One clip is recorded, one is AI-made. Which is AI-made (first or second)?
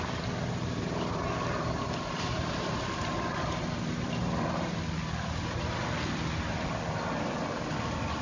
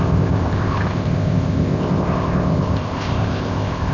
second